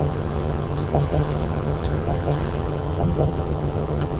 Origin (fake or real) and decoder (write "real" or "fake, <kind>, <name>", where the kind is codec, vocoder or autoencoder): fake, vocoder, HiFi-GAN